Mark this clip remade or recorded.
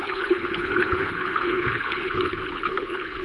remade